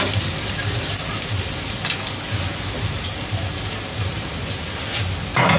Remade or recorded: recorded